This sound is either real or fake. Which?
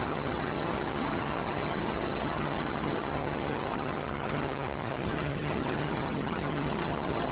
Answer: fake